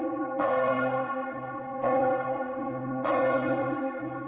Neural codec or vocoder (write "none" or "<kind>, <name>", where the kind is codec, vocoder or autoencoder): vocoder, Vocos